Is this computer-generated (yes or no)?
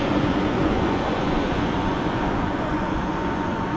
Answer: yes